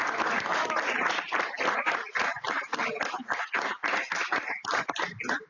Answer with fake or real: real